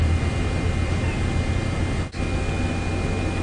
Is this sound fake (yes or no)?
no